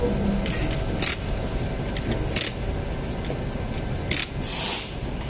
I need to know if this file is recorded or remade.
recorded